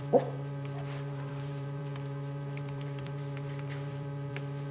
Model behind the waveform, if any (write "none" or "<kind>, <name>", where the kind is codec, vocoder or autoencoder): vocoder, BigVGAN v2